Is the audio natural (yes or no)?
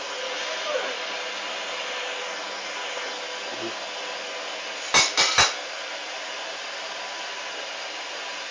yes